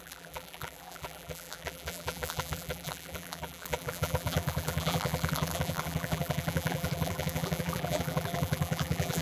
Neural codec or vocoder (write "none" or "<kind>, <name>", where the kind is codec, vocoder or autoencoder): vocoder, BigVGAN v2